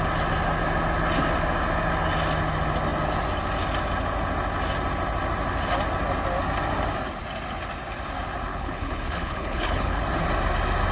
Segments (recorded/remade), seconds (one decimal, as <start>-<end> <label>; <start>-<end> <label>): 0.0-8.5 recorded; 8.5-10.0 remade; 10.0-10.9 recorded